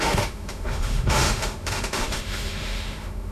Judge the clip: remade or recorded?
remade